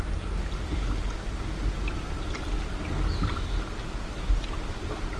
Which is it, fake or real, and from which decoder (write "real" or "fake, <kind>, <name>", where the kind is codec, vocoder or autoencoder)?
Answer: real